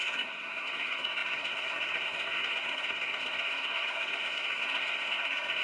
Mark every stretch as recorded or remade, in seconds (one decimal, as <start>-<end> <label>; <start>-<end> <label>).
0.0-5.6 remade